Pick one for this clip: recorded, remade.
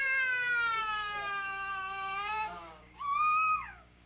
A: remade